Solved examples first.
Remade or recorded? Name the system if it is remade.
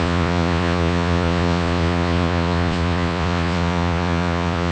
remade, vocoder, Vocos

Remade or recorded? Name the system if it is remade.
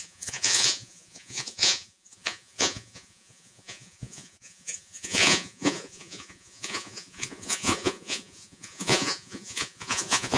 remade, vocoder, Vocos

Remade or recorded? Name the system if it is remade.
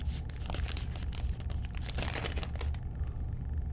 recorded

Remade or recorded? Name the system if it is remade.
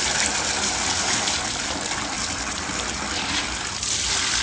recorded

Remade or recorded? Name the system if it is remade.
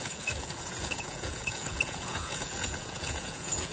remade, vocoder, Vocos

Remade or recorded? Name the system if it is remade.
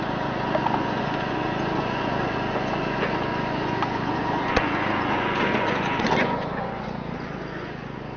remade, vocoder, Vocos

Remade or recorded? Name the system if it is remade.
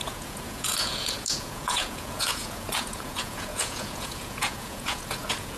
remade, vocoder, Vocos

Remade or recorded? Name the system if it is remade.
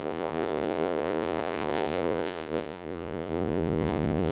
remade, vocoder, Vocos